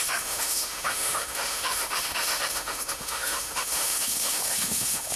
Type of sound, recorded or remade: remade